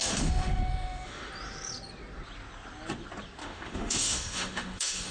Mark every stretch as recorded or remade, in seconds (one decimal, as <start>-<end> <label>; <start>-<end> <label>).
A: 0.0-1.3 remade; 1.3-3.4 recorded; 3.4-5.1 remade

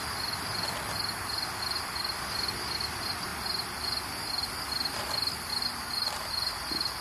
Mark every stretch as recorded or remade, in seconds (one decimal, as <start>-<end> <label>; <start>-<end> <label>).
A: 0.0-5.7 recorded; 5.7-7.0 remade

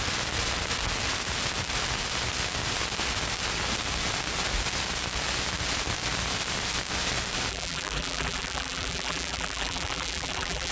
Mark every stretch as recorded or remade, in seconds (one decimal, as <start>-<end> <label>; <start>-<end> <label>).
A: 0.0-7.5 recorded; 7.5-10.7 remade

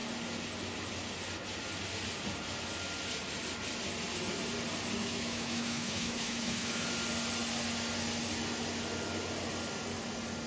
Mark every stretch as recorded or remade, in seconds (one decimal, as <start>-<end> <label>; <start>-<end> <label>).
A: 0.0-5.0 recorded; 5.0-6.9 remade; 6.9-10.5 recorded